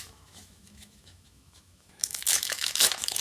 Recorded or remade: remade